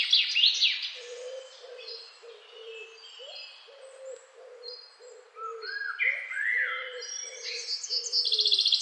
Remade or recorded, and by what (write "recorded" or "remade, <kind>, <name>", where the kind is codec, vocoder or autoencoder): recorded